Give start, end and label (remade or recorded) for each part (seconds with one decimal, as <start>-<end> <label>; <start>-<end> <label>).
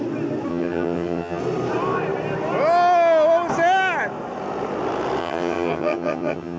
0.0-0.5 recorded; 0.5-1.4 remade; 1.4-5.2 recorded; 5.2-6.6 remade